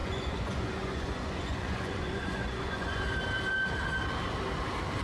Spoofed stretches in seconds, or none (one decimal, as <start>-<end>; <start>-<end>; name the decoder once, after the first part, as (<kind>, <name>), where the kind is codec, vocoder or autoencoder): 0.0-3.0 (vocoder, Vocos)